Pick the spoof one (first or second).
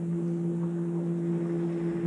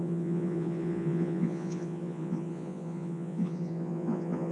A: second